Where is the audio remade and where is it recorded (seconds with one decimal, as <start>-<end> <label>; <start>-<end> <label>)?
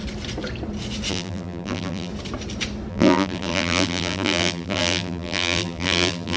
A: 0.0-1.1 recorded; 1.1-2.1 remade; 2.1-2.9 recorded; 2.9-6.4 remade